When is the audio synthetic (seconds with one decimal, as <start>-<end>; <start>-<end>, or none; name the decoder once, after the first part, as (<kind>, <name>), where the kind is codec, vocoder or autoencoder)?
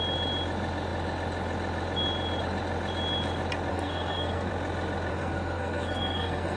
3.7-4.5 (codec, SNAC); 5.1-6.6